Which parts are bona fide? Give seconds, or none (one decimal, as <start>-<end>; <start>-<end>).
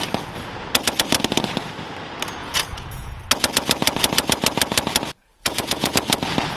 0.0-2.4; 3.2-5.3; 5.9-6.6